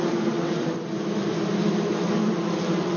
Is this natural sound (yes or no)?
yes